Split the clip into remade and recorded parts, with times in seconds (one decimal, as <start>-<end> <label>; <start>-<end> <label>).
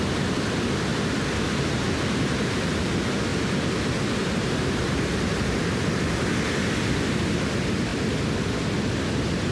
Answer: 0.0-3.3 recorded; 3.3-5.1 remade; 5.1-9.5 recorded